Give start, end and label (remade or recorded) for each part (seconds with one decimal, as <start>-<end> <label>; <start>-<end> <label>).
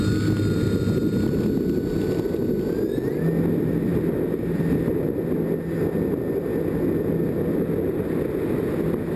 0.0-9.2 recorded